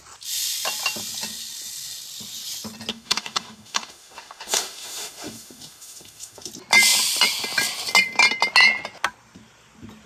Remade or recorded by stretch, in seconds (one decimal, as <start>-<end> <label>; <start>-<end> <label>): 0.0-2.9 recorded; 2.9-6.5 remade; 6.5-10.1 recorded